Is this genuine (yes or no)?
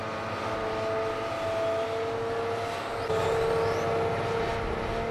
yes